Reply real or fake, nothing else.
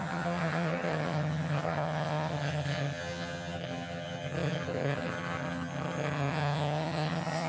fake